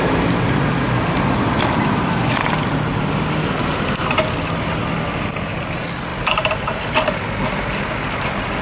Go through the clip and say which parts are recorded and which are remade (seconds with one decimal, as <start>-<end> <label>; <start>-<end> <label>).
0.0-6.1 recorded; 6.1-7.8 remade; 7.8-8.6 recorded